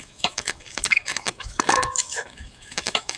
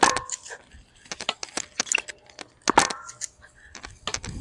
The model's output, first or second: first